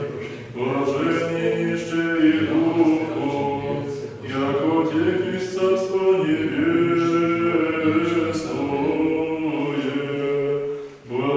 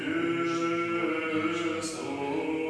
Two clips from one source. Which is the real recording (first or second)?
second